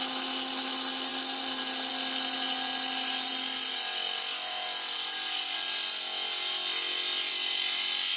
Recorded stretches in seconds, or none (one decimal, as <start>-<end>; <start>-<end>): 0.0-8.2